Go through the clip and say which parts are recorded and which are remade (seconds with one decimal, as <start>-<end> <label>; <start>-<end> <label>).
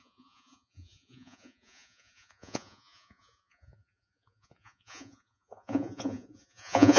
0.0-7.0 remade